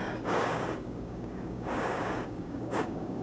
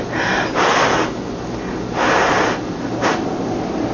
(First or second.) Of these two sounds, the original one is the second